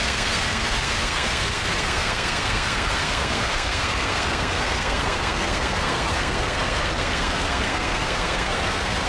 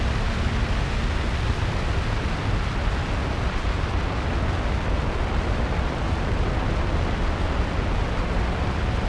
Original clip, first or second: second